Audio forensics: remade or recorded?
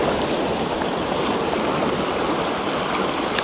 recorded